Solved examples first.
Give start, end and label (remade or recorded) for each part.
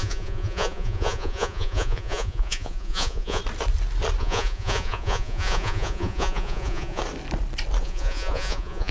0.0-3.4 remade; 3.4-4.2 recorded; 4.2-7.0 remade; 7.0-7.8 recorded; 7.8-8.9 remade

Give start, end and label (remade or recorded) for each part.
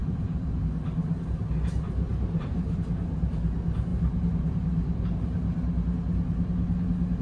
0.0-0.6 remade; 0.6-2.1 recorded; 2.1-3.0 remade; 3.0-7.2 recorded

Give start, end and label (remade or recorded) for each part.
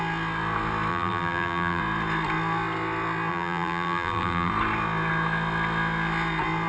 0.0-0.9 recorded; 0.9-1.8 remade; 1.8-3.3 recorded; 3.3-4.5 remade; 4.5-6.7 recorded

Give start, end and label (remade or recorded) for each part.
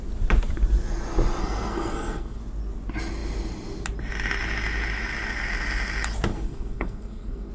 0.0-1.4 recorded; 1.4-2.4 remade; 2.4-6.3 recorded; 6.3-7.5 remade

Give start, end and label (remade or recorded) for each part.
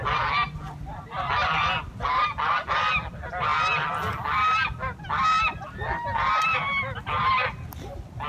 0.0-8.3 recorded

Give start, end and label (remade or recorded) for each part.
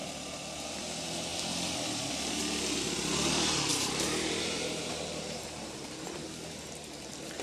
0.0-3.7 recorded; 3.7-6.1 remade; 6.1-7.4 recorded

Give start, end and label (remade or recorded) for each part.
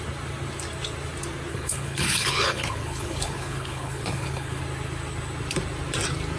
0.0-1.5 recorded; 1.5-4.6 remade; 4.6-6.4 recorded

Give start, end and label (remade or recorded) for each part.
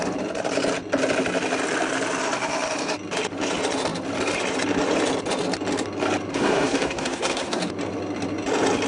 0.0-6.3 recorded; 6.3-7.6 remade; 7.6-8.9 recorded